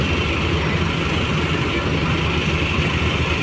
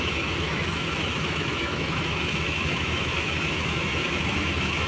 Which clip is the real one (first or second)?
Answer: first